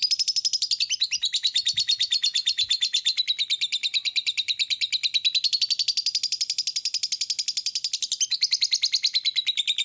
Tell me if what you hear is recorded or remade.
recorded